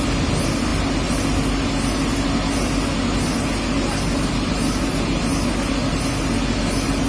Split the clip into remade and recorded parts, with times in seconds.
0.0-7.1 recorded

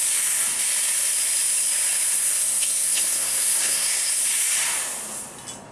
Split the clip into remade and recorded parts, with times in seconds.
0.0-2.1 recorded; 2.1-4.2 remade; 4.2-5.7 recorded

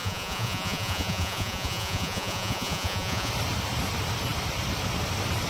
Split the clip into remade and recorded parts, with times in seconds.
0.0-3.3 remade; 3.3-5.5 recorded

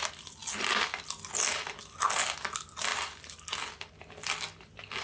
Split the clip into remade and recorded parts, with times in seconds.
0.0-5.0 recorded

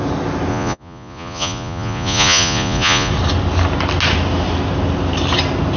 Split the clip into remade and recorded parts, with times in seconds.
0.0-0.5 recorded; 0.5-3.1 remade; 3.1-5.8 recorded